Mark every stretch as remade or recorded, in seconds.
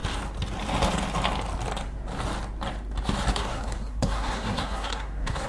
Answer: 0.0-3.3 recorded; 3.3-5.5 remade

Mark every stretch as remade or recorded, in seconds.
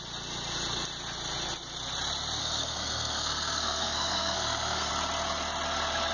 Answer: 0.0-2.4 recorded; 2.4-4.9 remade; 4.9-6.1 recorded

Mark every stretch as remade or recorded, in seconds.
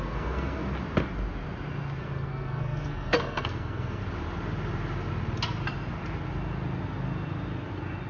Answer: 0.0-0.6 remade; 0.6-2.0 recorded; 2.0-4.0 remade; 4.0-8.1 recorded